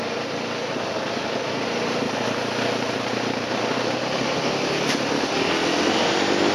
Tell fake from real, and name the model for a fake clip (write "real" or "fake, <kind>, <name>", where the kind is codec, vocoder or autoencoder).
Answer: real